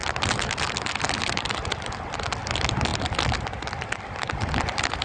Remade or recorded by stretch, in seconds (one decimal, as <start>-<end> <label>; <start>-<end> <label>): 0.0-5.0 recorded